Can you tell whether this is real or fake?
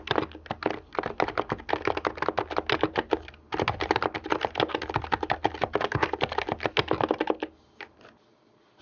real